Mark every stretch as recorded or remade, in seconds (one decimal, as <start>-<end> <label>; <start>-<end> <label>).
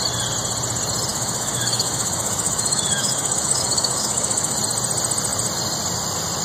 0.0-1.1 recorded; 1.1-4.6 remade; 4.6-6.4 recorded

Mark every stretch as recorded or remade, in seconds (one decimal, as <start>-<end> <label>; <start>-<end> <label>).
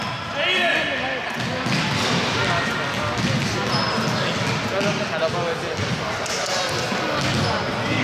0.0-8.0 recorded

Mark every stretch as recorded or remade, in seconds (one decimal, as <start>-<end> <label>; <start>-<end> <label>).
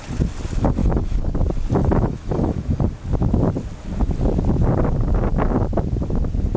0.0-0.8 recorded; 0.8-1.3 remade; 1.3-1.8 recorded; 1.8-2.8 remade; 2.8-6.6 recorded